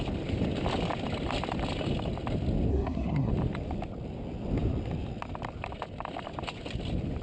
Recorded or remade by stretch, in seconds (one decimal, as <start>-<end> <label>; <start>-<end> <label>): 0.0-2.7 recorded; 2.7-3.3 remade; 3.3-7.2 recorded